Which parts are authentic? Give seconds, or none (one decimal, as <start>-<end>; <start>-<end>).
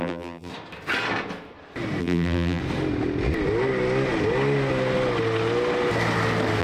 0.5-2.0; 2.6-6.6